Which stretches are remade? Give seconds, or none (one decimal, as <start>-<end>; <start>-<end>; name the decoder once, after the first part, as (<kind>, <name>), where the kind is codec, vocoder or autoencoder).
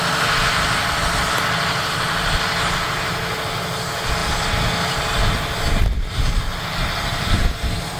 none